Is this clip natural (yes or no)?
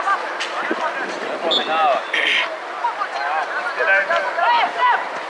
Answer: yes